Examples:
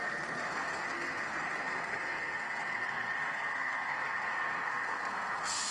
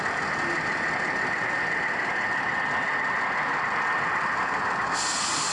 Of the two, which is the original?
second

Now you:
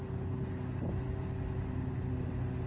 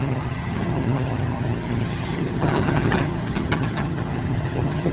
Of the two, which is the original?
first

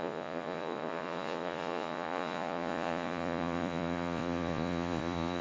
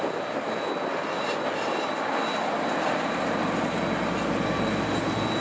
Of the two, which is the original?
second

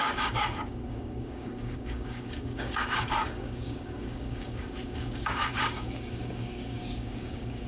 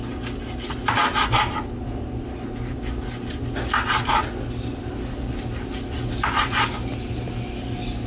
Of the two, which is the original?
second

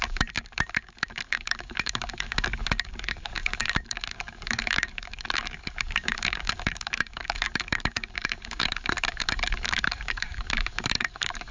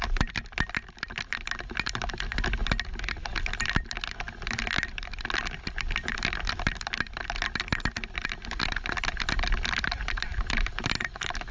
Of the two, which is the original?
second